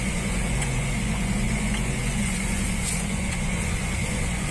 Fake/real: fake